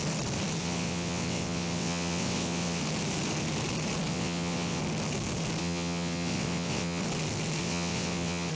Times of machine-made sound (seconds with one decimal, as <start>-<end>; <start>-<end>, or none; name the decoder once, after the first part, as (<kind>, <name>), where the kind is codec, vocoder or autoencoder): 0.6-2.8 (vocoder, WaveNeXt); 4.1-4.8; 5.6-7.0; 7.6-8.5